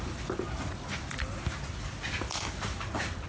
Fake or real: real